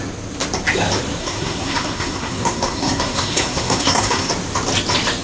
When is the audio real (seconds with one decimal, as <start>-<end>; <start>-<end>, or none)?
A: 0.0-1.2; 4.3-5.2